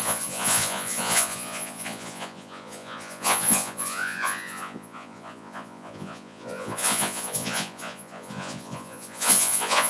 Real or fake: fake